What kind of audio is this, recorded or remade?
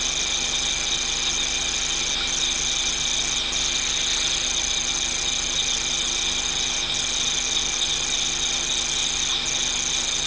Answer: recorded